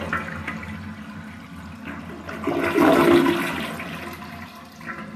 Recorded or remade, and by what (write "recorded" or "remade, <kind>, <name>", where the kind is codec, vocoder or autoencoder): recorded